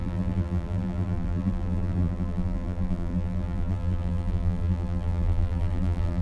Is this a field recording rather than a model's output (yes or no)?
no